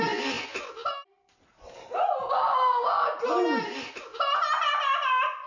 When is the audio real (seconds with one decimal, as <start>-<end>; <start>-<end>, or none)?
0.0-5.5